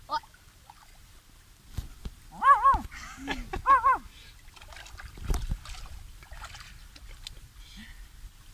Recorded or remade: recorded